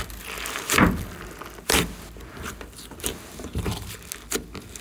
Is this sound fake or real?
real